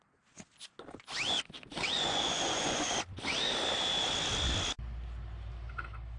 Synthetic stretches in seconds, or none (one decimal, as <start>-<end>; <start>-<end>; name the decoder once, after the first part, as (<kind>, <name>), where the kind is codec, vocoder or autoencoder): 1.9-2.9 (vocoder, Vocos)